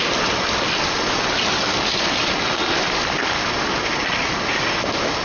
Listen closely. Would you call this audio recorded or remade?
recorded